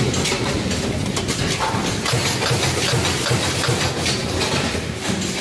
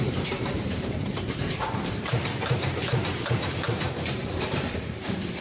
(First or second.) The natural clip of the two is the first